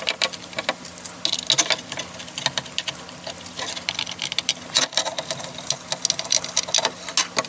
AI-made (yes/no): no